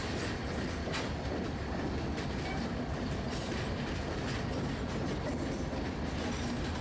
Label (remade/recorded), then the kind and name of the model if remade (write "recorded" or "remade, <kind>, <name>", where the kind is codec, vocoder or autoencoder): recorded